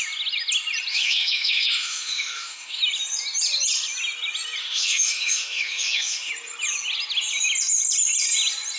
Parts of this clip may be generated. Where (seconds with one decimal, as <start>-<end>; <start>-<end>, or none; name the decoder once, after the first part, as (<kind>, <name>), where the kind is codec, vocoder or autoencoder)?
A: 0.9-2.8 (autoencoder, DAC-VAE); 4.6-6.3